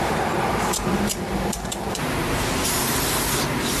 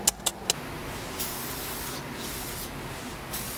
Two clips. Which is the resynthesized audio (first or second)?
first